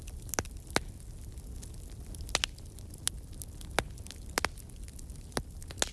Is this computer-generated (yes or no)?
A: no